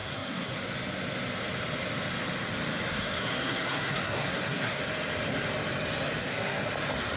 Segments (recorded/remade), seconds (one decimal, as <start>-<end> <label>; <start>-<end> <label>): 0.0-0.5 remade; 0.5-2.9 recorded; 2.9-4.8 remade; 4.8-6.2 recorded; 6.2-6.7 remade; 6.7-7.2 recorded